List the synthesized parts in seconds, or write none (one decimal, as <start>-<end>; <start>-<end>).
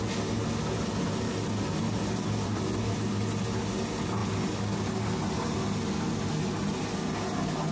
none